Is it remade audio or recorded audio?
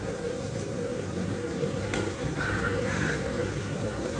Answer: remade